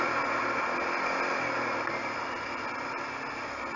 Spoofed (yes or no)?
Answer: no